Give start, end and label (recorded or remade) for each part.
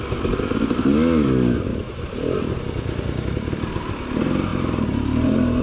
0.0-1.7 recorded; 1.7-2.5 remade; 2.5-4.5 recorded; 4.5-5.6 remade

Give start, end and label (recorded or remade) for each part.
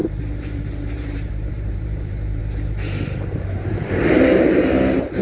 0.0-2.4 remade; 2.4-3.3 recorded; 3.3-5.2 remade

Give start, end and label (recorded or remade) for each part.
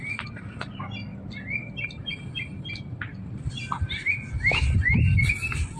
0.0-5.8 recorded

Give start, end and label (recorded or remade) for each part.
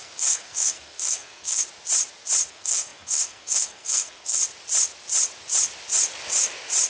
0.0-1.6 remade; 1.6-2.5 recorded; 2.5-4.4 remade; 4.4-6.9 recorded